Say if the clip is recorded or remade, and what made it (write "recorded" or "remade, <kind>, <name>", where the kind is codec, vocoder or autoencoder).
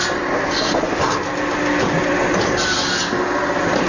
recorded